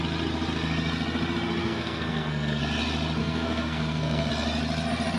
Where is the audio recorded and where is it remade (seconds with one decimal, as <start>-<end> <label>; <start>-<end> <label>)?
0.0-1.6 recorded; 1.6-2.6 remade; 2.6-3.2 recorded; 3.2-4.3 remade; 4.3-5.2 recorded